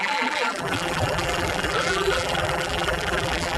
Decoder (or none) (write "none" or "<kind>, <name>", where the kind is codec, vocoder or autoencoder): vocoder, BigVGAN v2